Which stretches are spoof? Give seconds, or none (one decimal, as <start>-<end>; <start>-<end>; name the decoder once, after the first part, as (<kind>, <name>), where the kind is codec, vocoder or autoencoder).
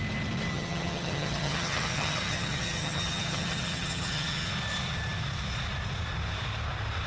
0.5-4.5 (vocoder, HiFi-GAN)